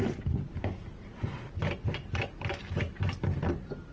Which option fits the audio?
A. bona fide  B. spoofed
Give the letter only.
A